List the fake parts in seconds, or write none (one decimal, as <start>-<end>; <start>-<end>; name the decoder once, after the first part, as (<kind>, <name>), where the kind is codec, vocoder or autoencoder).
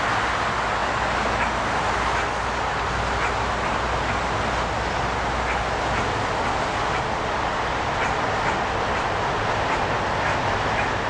none